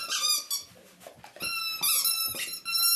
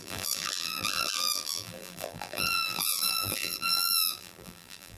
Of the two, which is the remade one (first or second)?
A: second